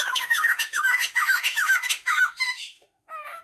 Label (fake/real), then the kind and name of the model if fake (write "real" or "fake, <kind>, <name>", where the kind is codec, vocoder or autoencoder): fake, autoencoder, DAC-VAE